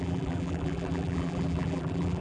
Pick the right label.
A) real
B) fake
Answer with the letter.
B